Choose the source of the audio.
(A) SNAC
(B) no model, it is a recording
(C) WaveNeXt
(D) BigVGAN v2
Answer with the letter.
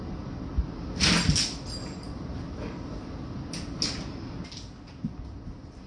B